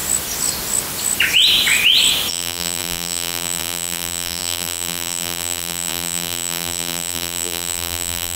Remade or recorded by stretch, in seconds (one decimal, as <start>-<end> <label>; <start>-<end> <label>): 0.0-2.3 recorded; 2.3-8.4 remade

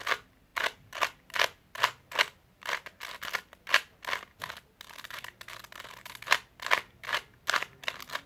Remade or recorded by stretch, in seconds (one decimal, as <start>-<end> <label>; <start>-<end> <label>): 0.0-8.3 recorded

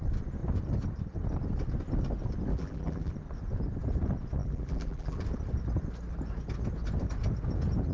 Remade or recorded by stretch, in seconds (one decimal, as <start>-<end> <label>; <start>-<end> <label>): 0.0-2.5 recorded; 2.5-3.1 remade; 3.1-4.4 recorded; 4.4-5.2 remade; 5.2-7.9 recorded